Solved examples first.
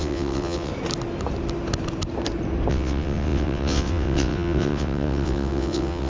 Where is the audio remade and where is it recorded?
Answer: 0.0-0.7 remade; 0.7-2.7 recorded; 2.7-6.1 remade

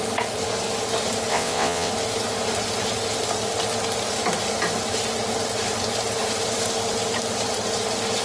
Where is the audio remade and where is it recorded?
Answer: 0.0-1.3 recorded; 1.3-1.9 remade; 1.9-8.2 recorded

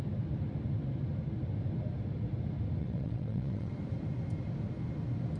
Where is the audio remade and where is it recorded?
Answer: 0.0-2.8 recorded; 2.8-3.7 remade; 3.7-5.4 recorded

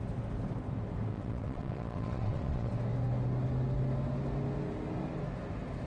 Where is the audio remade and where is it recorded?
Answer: 0.0-1.1 recorded; 1.1-2.7 remade; 2.7-5.9 recorded

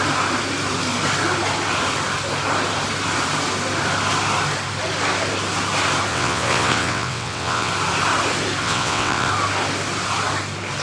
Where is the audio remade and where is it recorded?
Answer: 0.0-6.1 recorded; 6.1-7.7 remade; 7.7-8.6 recorded; 8.6-9.3 remade; 9.3-10.8 recorded

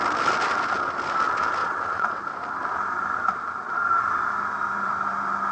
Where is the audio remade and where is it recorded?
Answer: 0.0-1.6 recorded; 1.6-2.2 remade; 2.2-5.5 recorded

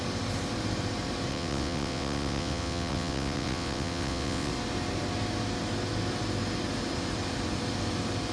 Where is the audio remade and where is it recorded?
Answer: 0.0-1.3 recorded; 1.3-4.5 remade; 4.5-8.3 recorded